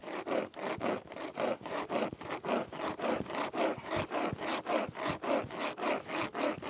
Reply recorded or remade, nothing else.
recorded